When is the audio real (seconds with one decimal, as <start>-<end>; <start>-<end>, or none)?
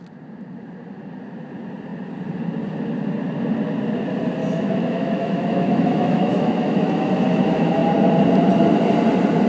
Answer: 0.0-4.4; 7.1-9.5